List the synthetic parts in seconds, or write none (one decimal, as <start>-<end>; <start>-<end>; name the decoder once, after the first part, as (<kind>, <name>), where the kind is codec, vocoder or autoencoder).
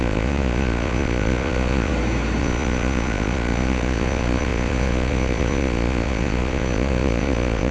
0.0-1.9 (vocoder, Vocos); 2.4-7.7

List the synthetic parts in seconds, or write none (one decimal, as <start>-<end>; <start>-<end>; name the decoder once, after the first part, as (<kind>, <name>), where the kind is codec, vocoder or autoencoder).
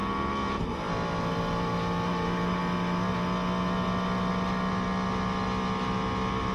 0.0-0.6 (vocoder, Vocos)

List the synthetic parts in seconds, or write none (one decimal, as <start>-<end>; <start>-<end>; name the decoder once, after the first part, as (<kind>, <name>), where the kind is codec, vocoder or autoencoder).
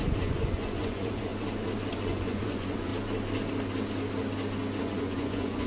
0.0-1.3 (vocoder, Vocos); 1.9-2.9; 4.8-5.7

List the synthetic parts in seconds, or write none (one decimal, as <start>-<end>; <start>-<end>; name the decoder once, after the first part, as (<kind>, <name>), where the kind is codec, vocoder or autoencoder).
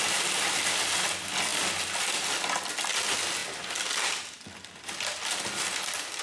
none